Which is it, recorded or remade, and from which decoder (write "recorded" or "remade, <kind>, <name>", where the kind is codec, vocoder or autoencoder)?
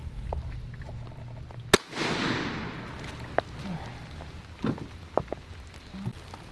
recorded